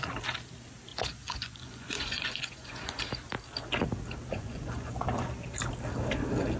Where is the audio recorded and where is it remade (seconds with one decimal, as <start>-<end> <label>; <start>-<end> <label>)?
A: 0.0-0.9 recorded; 0.9-3.0 remade; 3.0-4.3 recorded; 4.3-5.3 remade; 5.3-6.6 recorded